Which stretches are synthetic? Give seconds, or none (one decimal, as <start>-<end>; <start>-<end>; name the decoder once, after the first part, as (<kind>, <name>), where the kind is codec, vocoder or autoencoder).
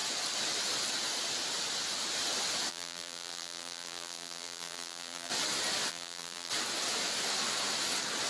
2.7-5.3 (vocoder, BigVGAN v2); 5.9-6.5